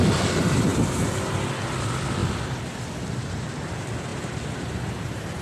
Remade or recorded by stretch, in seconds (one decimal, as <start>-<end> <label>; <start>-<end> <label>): 0.0-0.7 remade; 0.7-1.6 recorded; 1.6-4.1 remade; 4.1-5.4 recorded